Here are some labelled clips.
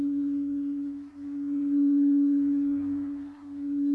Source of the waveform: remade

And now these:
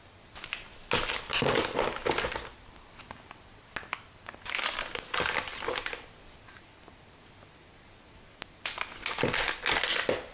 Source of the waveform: recorded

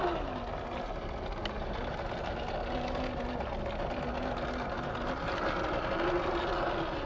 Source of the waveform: recorded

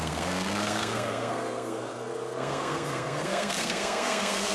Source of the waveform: remade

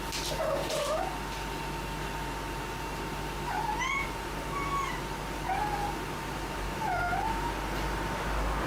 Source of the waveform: recorded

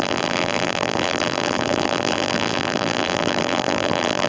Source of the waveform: remade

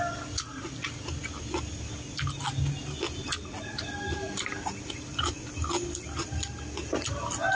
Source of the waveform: recorded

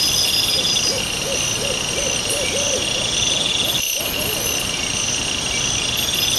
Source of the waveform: recorded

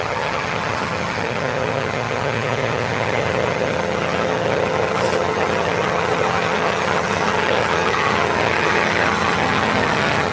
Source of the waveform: remade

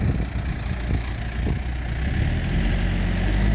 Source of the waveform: recorded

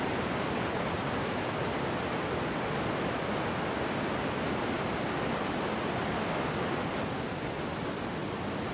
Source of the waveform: recorded